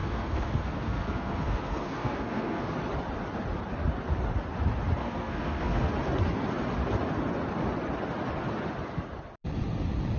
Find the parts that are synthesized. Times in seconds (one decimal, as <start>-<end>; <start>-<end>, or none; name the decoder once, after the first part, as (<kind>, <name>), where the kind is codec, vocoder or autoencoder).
0.0-2.7 (codec, SNAC); 5.0-5.9